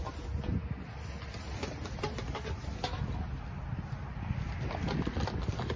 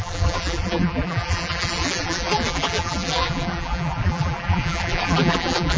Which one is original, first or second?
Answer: first